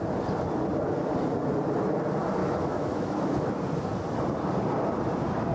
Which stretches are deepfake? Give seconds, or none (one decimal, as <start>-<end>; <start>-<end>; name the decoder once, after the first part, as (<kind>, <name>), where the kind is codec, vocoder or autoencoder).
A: 2.4-3.5 (autoencoder, DAC-VAE)